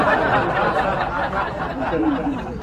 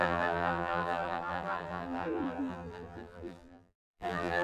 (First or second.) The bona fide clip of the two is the first